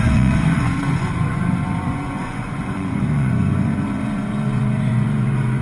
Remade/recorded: remade